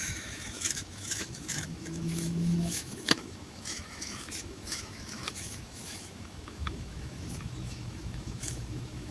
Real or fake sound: fake